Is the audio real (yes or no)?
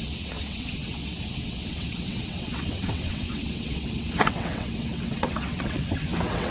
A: no